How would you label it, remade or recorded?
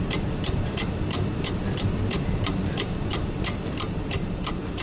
remade